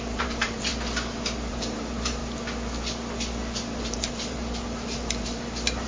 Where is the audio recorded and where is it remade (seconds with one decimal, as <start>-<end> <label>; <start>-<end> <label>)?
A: 0.0-0.7 remade; 0.7-1.5 recorded; 1.5-2.2 remade; 2.2-3.8 recorded; 3.8-5.9 remade